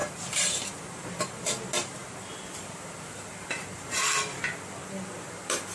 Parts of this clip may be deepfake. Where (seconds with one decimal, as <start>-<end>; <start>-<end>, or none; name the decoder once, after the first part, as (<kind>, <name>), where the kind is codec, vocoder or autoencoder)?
0.0-5.7 (vocoder, BigVGAN v2)